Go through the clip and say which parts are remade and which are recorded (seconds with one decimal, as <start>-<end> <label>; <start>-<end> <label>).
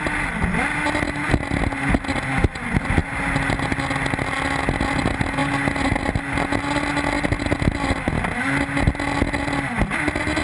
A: 0.0-10.4 recorded